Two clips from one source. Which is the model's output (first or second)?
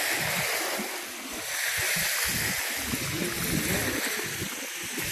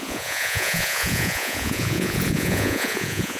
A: second